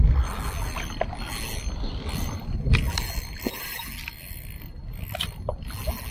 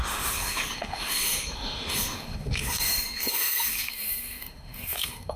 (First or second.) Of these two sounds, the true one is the first